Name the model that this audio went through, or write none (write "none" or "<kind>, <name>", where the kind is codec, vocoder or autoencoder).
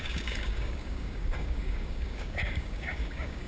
codec, DAC